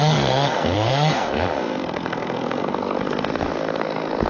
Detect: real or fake fake